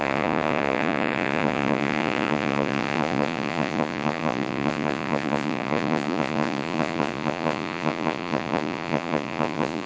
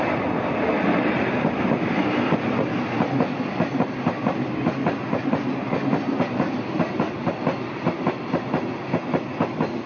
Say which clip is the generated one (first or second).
first